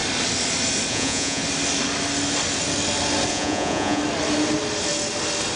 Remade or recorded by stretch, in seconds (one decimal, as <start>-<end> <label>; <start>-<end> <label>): 0.0-0.9 recorded; 0.9-1.4 remade; 1.4-3.3 recorded; 3.3-4.0 remade; 4.0-5.6 recorded